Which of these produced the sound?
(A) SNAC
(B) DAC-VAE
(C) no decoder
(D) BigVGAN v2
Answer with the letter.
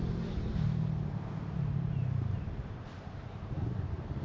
D